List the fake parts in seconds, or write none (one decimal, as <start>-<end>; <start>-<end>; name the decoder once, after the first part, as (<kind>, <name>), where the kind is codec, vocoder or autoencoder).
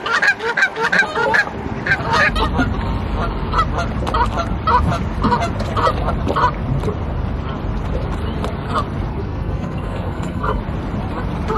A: 9.1-10.6 (codec, SNAC)